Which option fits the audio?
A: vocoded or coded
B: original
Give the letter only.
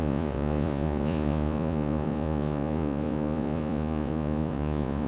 A